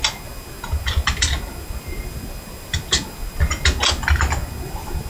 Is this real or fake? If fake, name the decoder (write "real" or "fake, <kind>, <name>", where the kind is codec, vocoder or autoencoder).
real